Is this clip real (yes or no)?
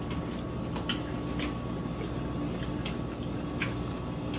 yes